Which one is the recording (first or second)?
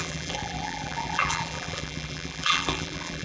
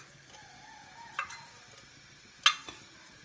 second